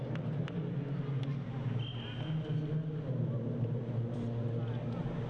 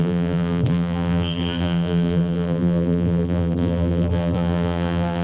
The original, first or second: first